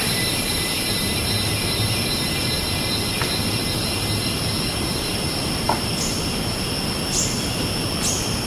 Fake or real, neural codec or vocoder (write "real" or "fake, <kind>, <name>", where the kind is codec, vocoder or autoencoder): real